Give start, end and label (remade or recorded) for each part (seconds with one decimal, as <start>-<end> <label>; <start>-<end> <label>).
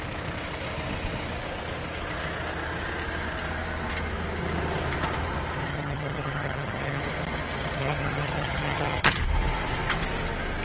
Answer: 0.0-5.7 recorded; 5.7-7.0 remade; 7.0-7.8 recorded; 7.8-9.2 remade; 9.2-10.6 recorded